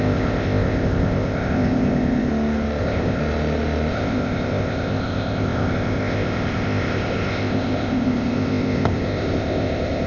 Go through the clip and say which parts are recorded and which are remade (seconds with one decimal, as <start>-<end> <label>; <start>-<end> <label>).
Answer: 0.0-2.3 remade; 2.3-2.8 recorded; 2.8-3.2 remade; 3.2-3.9 recorded; 3.9-10.1 remade